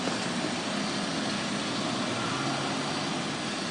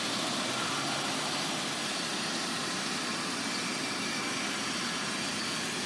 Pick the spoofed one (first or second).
second